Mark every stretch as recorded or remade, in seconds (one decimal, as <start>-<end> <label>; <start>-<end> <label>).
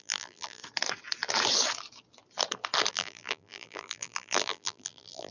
0.0-0.6 remade; 0.6-2.9 recorded; 2.9-5.3 remade